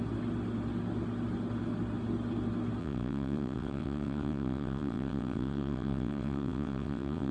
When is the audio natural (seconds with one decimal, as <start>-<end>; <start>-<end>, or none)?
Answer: 0.0-2.8